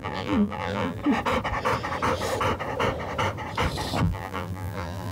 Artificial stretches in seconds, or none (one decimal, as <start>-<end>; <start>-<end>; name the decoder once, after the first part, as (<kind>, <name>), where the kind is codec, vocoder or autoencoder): 0.0-1.0 (vocoder, BigVGAN v2); 4.0-5.1